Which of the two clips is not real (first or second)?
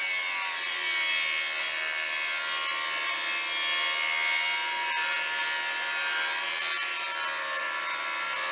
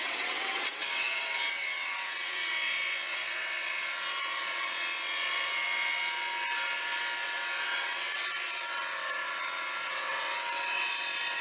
second